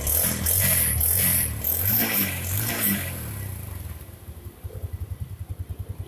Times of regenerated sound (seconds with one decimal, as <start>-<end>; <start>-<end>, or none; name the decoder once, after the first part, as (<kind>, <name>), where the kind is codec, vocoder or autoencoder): 1.3-5.0 (vocoder, BigVGAN v2)